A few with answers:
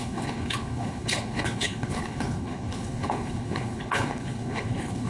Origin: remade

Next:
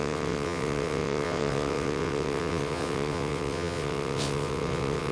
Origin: remade